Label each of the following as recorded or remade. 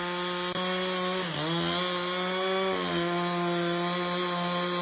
recorded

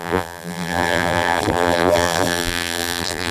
remade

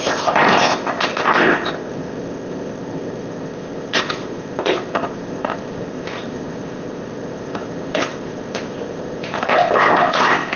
remade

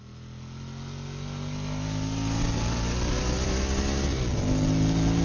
recorded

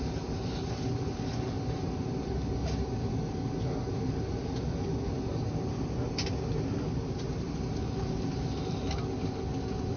recorded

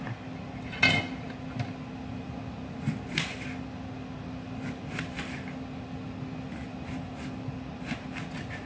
recorded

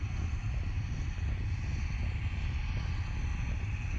recorded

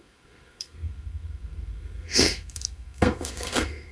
remade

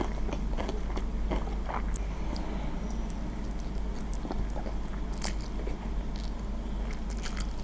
recorded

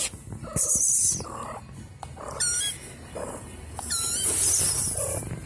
recorded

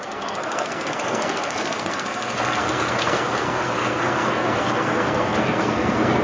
remade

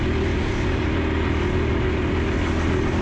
recorded